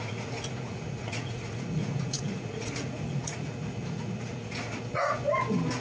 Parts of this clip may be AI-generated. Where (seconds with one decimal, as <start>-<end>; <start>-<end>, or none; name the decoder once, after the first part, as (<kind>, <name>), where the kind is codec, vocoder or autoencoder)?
0.0-5.2 (vocoder, Vocos)